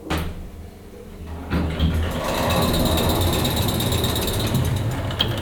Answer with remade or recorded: recorded